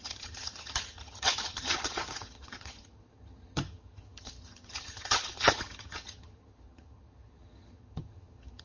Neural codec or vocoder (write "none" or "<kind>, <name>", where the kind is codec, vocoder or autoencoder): vocoder, HiFi-GAN